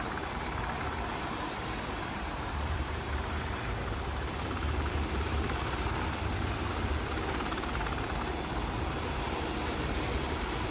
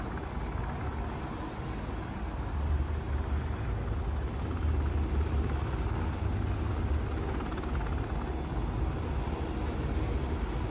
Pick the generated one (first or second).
first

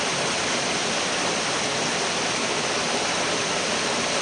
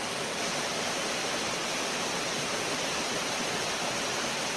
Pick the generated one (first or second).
second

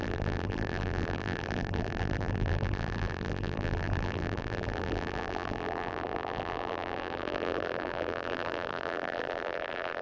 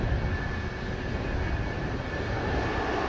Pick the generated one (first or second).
first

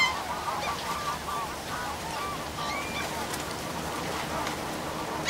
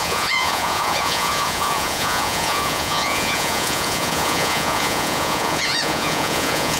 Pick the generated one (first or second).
second